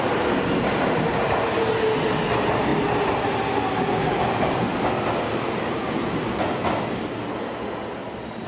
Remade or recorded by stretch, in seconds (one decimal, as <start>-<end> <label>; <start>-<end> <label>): 0.0-8.5 recorded